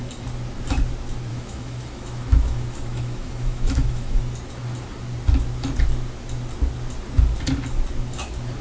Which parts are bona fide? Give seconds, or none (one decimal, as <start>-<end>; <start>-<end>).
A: 0.0-1.3; 4.2-8.6